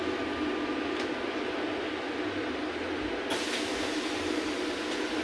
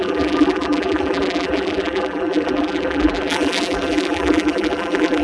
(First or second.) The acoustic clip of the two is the first